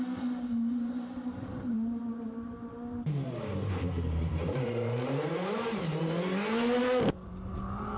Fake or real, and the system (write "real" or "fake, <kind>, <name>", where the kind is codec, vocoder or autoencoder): fake, vocoder, BigVGAN v2